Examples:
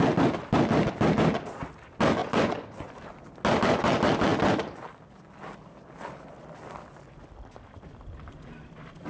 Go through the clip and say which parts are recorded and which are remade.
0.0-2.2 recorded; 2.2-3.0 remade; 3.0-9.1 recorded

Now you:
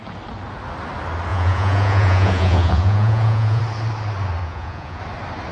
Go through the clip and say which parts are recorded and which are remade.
0.0-1.3 recorded; 1.3-3.6 remade; 3.6-4.4 recorded; 4.4-5.0 remade; 5.0-5.5 recorded